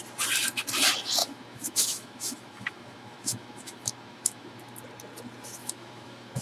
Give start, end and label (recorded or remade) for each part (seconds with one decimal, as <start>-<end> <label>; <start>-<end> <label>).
0.0-1.2 recorded; 1.2-4.7 remade; 4.7-5.6 recorded; 5.6-6.4 remade